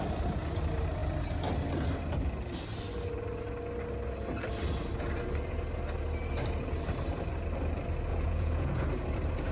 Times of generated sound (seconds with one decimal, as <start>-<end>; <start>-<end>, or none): 8.1-8.9